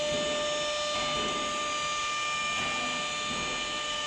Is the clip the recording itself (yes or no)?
yes